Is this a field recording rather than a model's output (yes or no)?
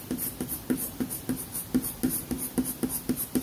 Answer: yes